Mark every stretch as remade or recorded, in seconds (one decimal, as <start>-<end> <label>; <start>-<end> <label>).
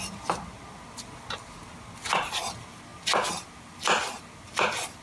0.0-5.0 recorded